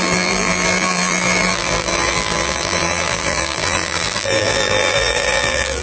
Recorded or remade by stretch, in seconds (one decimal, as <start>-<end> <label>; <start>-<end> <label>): 0.0-5.8 remade